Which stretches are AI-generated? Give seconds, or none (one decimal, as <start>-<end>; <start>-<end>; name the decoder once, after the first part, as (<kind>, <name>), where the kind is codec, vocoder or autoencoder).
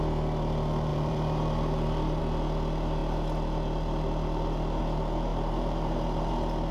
0.9-2.2 (vocoder, BigVGAN v2); 5.3-6.3